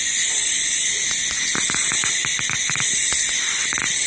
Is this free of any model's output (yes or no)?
yes